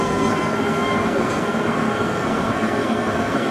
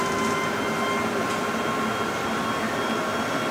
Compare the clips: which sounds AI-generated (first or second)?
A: first